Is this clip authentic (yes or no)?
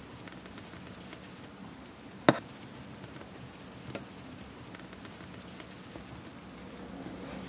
yes